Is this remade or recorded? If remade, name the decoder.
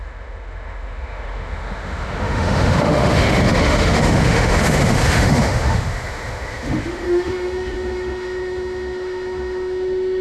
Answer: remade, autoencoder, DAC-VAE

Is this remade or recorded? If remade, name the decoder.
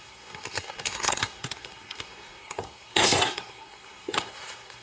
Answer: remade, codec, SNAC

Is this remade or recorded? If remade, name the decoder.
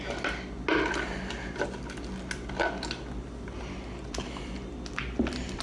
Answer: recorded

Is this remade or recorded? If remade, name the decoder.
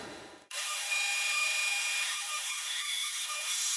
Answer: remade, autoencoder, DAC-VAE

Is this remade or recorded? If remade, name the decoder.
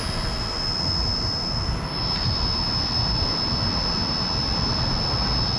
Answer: remade, vocoder, BigVGAN v2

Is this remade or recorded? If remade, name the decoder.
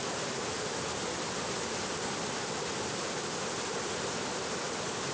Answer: recorded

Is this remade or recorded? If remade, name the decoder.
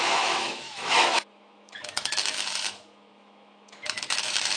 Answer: remade, autoencoder, DAC-VAE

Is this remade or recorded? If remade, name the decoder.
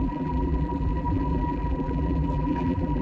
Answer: remade, vocoder, BigVGAN v2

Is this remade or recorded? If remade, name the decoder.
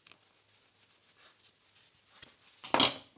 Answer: recorded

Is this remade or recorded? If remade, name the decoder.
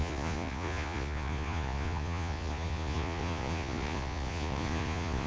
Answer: remade, vocoder, Vocos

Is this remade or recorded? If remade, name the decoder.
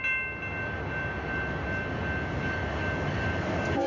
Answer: recorded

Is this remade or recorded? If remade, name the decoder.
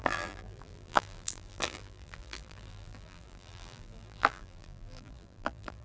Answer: remade, vocoder, BigVGAN v2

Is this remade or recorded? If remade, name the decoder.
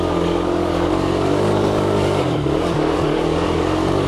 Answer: remade, codec, DAC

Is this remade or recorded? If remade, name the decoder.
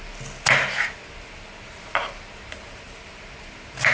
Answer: recorded